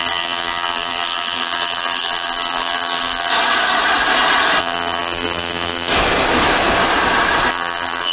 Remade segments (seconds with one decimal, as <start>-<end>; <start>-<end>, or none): 0.0-3.3; 4.6-5.9; 7.5-8.1